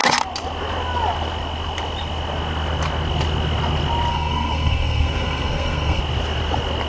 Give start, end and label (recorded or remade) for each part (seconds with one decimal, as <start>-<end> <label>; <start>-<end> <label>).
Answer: 0.0-4.1 recorded; 4.1-6.0 remade; 6.0-6.9 recorded